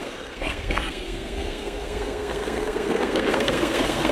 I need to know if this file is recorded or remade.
remade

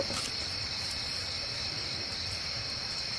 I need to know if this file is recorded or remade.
recorded